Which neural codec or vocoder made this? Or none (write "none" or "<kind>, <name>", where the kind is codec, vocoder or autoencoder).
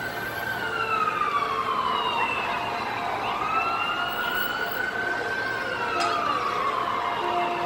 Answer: none